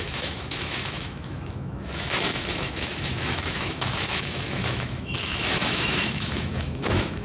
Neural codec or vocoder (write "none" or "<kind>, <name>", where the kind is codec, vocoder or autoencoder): autoencoder, DAC-VAE